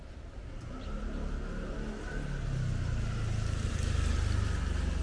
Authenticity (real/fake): real